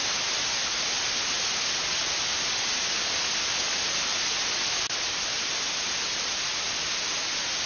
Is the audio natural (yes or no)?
yes